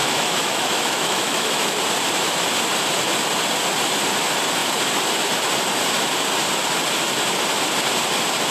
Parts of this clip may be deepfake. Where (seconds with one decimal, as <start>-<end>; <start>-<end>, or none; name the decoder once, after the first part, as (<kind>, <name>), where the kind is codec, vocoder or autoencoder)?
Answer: 0.0-1.8 (autoencoder, DAC-VAE)